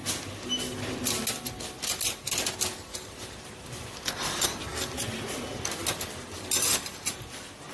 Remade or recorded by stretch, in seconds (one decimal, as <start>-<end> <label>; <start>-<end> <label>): 0.0-7.7 recorded